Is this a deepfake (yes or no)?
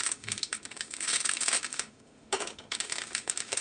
yes